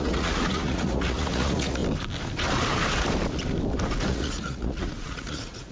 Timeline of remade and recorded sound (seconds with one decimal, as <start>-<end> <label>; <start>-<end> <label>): 0.0-1.8 remade; 1.8-4.1 recorded; 4.1-5.7 remade